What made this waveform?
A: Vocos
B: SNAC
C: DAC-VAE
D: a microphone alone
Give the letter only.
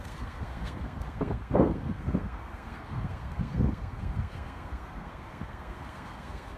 B